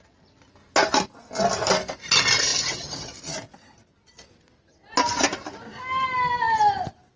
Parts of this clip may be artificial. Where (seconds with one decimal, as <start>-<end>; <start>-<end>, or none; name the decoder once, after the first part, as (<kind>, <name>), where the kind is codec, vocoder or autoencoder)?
none